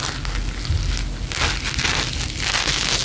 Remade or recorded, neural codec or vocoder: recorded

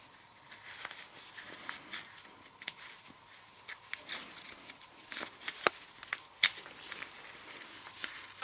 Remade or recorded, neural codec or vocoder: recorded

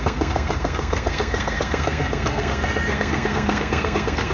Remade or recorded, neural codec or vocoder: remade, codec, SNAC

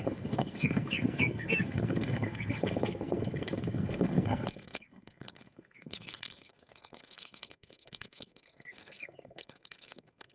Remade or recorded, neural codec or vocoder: remade, codec, SNAC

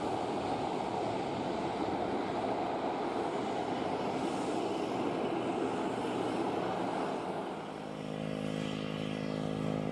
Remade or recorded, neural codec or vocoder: recorded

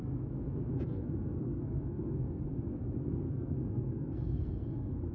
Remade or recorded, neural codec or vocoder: remade, codec, SNAC